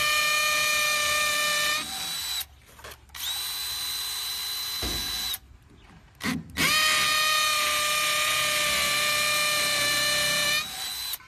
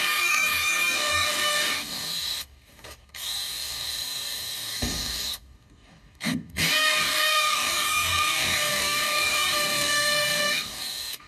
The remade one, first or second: second